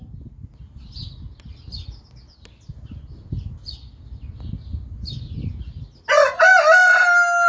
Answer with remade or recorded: recorded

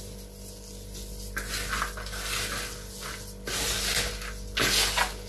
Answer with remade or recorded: recorded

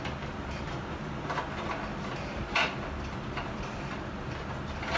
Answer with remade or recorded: recorded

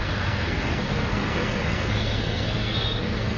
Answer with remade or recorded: remade